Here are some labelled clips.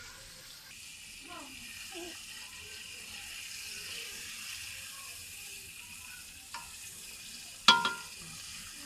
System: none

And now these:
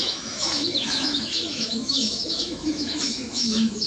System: autoencoder, DAC-VAE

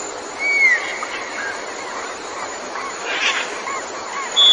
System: none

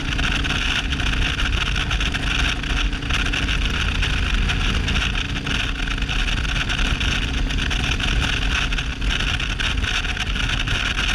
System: none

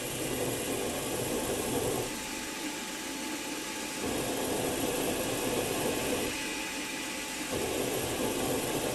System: none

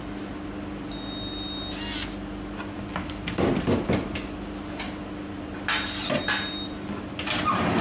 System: none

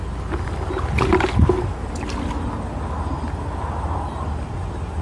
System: none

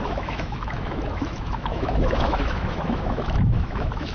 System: autoencoder, DAC-VAE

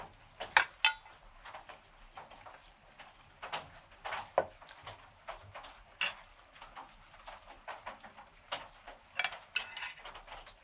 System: none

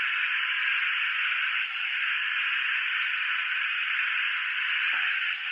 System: none